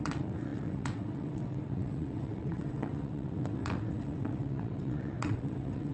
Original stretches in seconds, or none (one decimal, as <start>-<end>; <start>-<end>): none